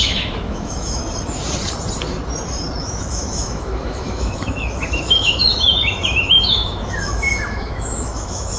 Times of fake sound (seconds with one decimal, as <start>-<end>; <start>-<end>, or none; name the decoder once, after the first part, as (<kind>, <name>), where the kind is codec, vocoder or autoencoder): 0.0-1.0 (autoencoder, DAC-VAE); 2.8-8.6